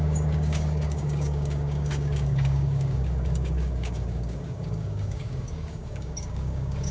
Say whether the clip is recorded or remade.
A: remade